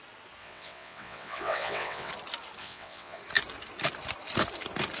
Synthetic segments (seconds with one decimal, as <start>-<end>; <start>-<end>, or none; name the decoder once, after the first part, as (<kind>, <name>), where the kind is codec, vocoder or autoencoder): 0.4-2.1 (vocoder, WaveNeXt); 2.6-3.2